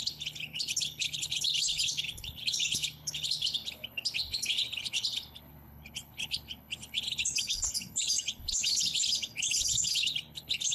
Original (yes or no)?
no